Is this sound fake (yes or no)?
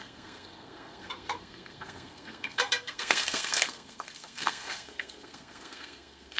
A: yes